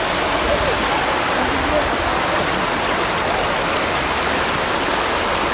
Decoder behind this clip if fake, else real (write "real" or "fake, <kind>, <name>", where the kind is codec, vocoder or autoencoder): real